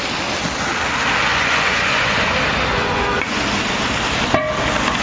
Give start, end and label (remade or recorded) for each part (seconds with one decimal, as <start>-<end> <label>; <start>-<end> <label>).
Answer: 0.0-1.3 recorded; 1.3-2.3 remade; 2.3-2.7 recorded; 2.7-3.4 remade; 3.4-5.0 recorded